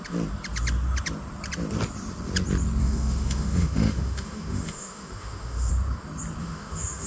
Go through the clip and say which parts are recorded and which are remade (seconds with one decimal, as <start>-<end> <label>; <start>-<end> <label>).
0.0-2.8 recorded; 2.8-5.7 remade; 5.7-6.4 recorded; 6.4-7.1 remade